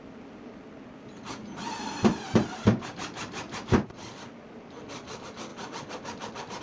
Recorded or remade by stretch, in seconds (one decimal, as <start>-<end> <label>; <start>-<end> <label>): 0.0-1.4 recorded; 1.4-4.1 remade; 4.1-6.6 recorded